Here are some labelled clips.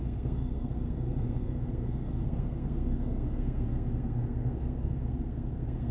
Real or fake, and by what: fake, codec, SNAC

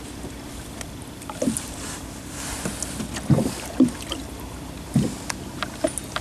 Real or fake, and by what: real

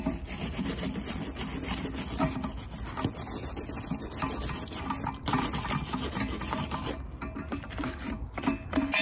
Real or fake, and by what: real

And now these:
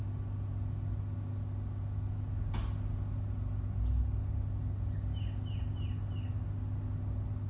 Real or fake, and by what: real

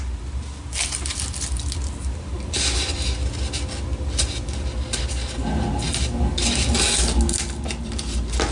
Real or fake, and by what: real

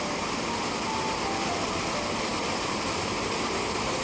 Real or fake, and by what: real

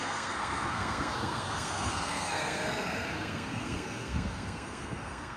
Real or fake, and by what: fake, codec, SNAC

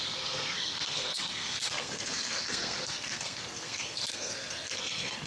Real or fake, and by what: fake, codec, SNAC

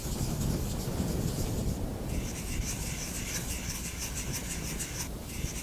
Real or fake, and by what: real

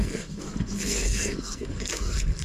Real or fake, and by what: fake, codec, SNAC